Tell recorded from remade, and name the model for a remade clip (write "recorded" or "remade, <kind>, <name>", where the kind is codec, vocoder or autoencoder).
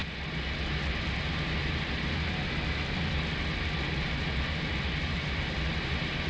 recorded